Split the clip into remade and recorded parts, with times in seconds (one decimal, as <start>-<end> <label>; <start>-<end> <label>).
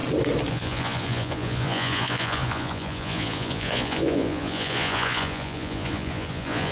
0.0-0.5 recorded; 0.5-6.7 remade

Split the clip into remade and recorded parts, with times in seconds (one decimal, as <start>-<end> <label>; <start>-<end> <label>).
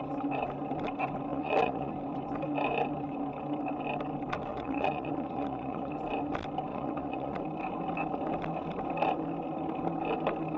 0.0-1.3 recorded; 1.3-1.9 remade; 1.9-4.5 recorded; 4.5-5.9 remade; 5.9-6.7 recorded; 6.7-7.4 remade; 7.4-10.6 recorded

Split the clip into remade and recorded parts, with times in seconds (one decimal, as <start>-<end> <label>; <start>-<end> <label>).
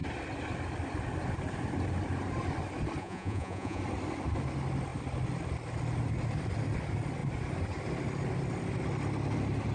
0.0-3.0 recorded; 3.0-3.8 remade; 3.8-9.7 recorded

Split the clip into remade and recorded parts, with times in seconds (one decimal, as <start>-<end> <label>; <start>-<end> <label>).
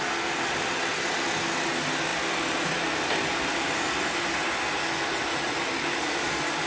0.0-6.7 recorded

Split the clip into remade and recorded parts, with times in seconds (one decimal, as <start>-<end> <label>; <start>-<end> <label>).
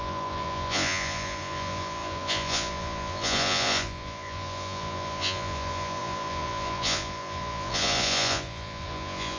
0.0-9.4 remade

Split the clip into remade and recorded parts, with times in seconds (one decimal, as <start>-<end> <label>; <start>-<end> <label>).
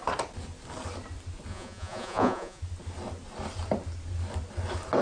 0.0-1.5 recorded; 1.5-2.6 remade; 2.6-5.0 recorded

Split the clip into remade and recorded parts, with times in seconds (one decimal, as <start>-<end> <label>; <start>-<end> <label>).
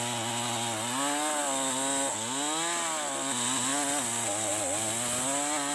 0.0-5.7 recorded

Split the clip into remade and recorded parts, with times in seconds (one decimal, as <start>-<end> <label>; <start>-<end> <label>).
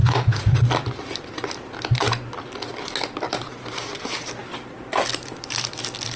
0.0-0.6 remade; 0.6-6.2 recorded